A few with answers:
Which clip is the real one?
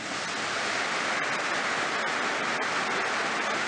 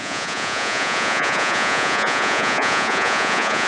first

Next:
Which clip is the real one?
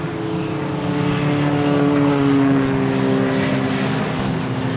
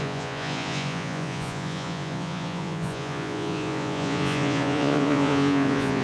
first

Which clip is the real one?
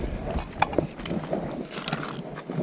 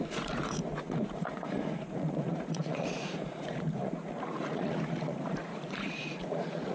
first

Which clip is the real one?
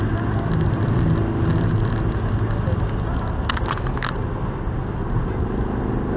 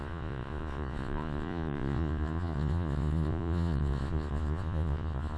first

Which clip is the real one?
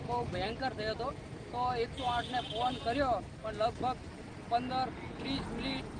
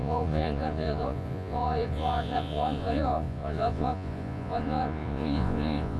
first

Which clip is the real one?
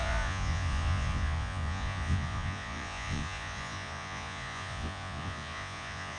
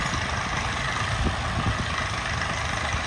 second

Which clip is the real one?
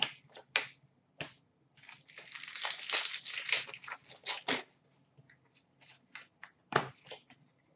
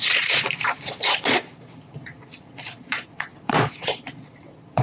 first